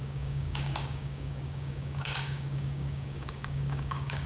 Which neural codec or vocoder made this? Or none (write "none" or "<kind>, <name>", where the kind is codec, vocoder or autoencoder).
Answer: codec, DAC